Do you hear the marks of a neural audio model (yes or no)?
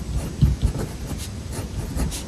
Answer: no